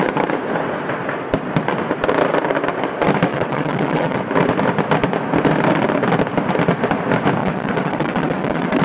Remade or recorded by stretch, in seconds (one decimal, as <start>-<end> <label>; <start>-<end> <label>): 0.0-3.3 recorded; 3.3-4.2 remade; 4.2-7.4 recorded; 7.4-8.8 remade

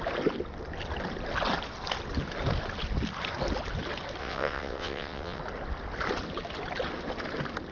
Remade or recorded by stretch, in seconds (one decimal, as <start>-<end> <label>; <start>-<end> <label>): 0.0-4.2 recorded; 4.2-5.4 remade; 5.4-7.7 recorded

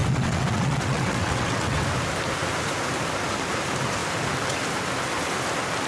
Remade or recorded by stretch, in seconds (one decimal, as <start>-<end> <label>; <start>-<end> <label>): 0.0-1.8 remade; 1.8-5.9 recorded

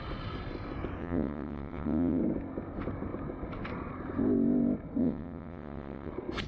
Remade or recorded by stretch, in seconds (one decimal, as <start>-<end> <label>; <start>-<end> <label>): 0.0-1.0 recorded; 1.0-2.2 remade; 2.2-5.0 recorded; 5.0-6.1 remade; 6.1-6.5 recorded

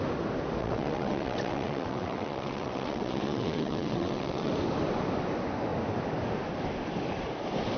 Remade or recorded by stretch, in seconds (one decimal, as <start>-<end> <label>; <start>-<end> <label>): 0.0-0.6 recorded; 0.6-4.5 remade; 4.5-7.8 recorded